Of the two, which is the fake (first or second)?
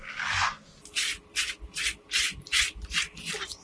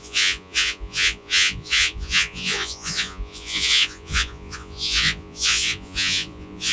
second